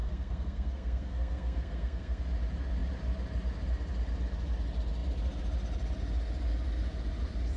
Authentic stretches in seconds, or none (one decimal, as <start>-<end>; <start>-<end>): 2.2-7.6